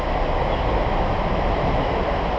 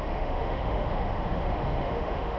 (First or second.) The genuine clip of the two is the first